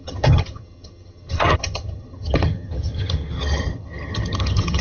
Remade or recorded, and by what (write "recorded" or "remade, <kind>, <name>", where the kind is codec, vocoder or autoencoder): remade, vocoder, HiFi-GAN